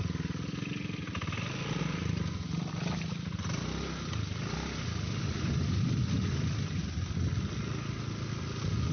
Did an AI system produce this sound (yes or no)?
no